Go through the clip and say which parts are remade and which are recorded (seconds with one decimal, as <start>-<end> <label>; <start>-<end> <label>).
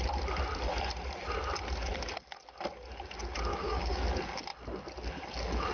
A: 0.0-3.5 recorded; 3.5-4.0 remade; 4.0-5.7 recorded